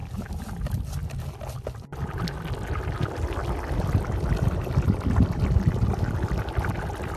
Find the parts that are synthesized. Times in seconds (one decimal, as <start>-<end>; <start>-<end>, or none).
none